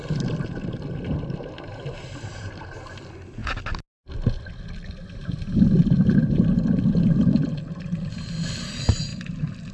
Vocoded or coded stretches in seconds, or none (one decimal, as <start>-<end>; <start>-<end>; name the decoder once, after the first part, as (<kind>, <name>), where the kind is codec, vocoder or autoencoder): none